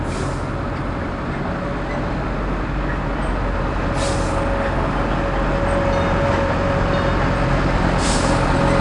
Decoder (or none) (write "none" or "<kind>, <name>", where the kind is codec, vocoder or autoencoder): none